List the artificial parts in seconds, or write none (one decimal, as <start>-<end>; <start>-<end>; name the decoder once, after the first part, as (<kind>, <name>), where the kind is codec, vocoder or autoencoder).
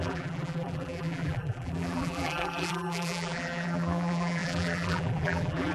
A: 0.0-5.7 (vocoder, BigVGAN v2)